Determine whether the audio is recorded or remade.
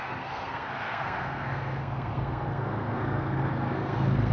remade